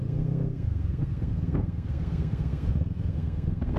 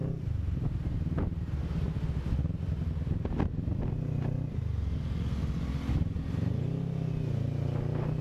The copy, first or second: first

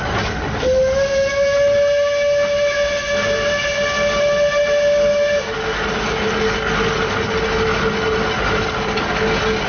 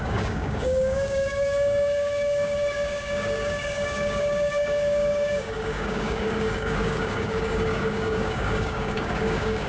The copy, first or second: second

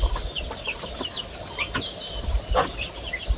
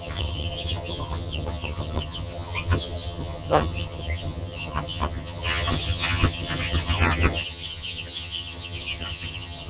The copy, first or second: second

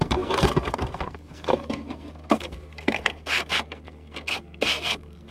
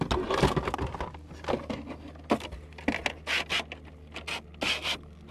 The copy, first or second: first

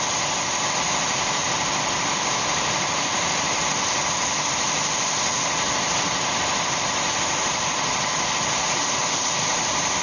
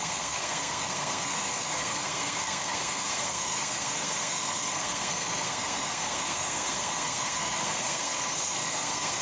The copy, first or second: second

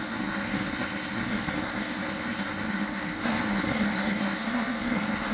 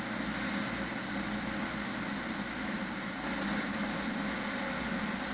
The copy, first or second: first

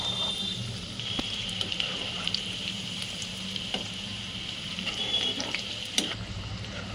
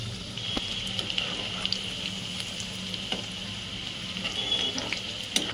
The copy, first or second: first